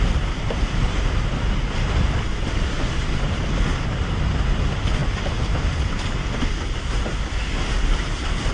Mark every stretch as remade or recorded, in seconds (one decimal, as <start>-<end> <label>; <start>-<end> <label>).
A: 0.0-8.5 recorded